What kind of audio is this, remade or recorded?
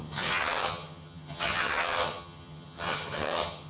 remade